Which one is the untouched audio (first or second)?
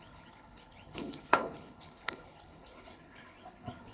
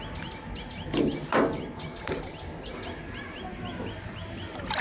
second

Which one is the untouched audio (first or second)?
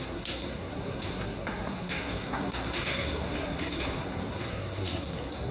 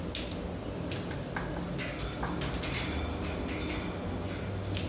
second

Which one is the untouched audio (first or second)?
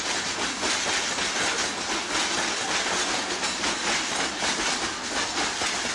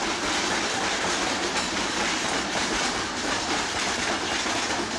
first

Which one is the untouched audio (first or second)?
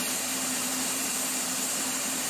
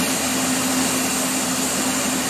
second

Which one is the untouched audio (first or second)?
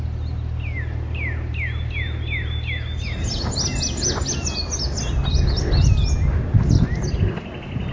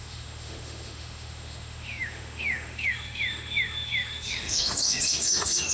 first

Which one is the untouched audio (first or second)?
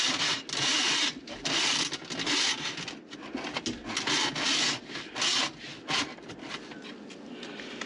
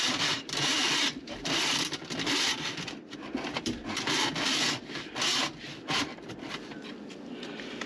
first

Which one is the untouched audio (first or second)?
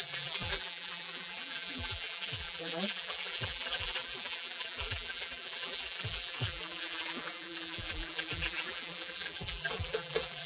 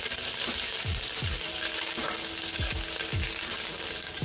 second